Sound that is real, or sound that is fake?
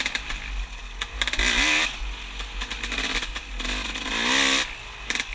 real